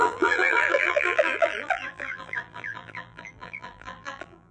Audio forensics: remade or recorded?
remade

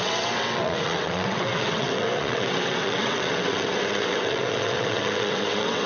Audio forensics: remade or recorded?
remade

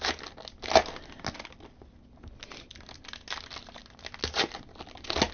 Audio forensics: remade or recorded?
recorded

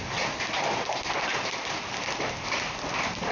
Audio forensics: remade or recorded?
recorded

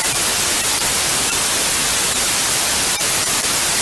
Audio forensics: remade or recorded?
remade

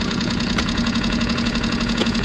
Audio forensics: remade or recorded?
remade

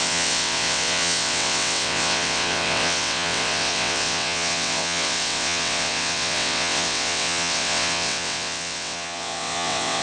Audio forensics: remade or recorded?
remade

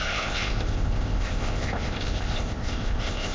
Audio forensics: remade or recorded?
remade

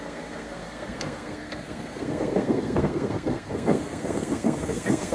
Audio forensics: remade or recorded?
remade